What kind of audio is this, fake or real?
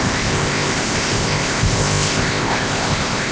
fake